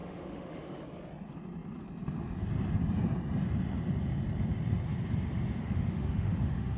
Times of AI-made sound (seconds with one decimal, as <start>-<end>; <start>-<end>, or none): 0.0-0.8; 5.6-6.8